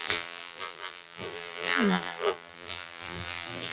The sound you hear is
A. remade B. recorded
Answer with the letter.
A